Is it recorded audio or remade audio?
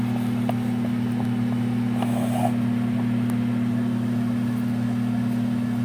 recorded